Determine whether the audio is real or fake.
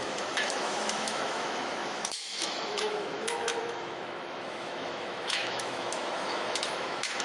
fake